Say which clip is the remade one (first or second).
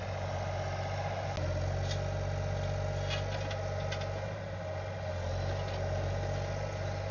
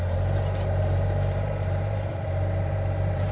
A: second